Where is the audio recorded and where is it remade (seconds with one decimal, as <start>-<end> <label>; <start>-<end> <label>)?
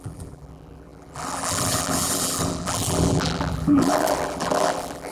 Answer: 0.0-5.1 remade